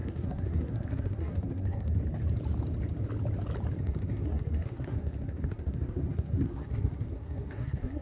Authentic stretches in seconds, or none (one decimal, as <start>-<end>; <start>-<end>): 2.0-3.8